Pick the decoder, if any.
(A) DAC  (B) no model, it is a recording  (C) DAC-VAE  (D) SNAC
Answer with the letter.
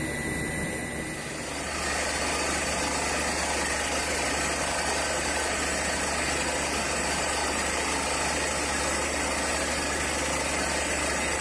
B